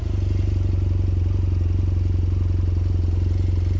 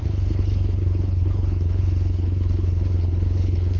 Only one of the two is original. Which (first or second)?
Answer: first